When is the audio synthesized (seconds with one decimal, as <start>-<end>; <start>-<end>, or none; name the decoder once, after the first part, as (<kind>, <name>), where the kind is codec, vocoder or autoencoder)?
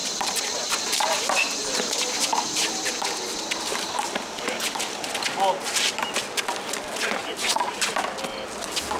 0.0-2.7 (vocoder, BigVGAN v2); 3.7-4.6; 7.2-7.9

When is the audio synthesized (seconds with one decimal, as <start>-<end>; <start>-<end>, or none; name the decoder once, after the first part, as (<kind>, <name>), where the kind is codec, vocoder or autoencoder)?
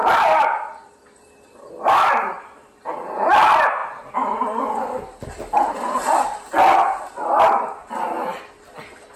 0.0-2.9 (vocoder, BigVGAN v2)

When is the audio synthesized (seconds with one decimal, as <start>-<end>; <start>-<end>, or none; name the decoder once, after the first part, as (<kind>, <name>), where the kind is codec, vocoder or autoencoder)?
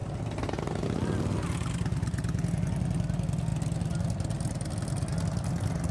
none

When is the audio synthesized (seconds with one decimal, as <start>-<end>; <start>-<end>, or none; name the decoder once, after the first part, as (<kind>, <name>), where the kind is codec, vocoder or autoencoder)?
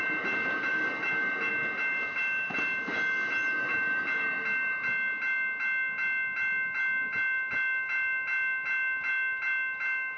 none